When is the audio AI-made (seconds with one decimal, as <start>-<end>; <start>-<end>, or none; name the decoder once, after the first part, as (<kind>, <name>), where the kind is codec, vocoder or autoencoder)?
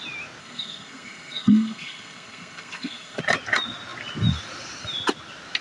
0.4-3.2 (codec, SNAC)